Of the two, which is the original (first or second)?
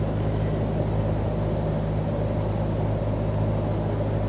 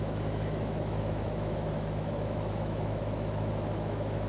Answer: first